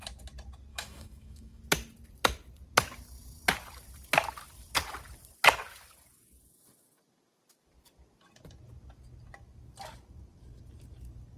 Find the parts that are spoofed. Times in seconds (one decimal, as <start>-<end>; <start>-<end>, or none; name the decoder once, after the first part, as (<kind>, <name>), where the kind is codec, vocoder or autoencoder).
0.7-1.6 (autoencoder, DAC-VAE)